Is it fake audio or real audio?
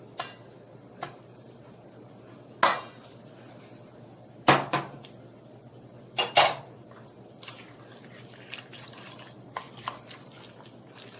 real